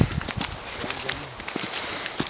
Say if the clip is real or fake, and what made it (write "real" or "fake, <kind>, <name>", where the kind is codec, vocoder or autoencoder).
real